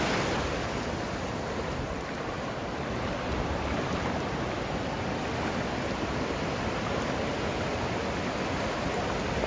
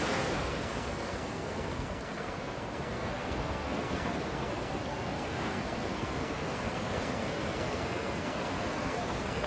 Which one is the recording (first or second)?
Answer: first